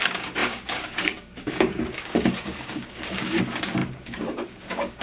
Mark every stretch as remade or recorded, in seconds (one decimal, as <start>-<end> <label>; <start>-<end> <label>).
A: 0.0-5.0 remade